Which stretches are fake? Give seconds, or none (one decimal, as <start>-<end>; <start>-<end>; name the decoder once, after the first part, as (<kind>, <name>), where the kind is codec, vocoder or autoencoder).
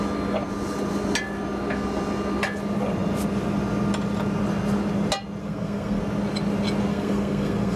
5.4-6.0 (codec, SNAC); 6.9-7.8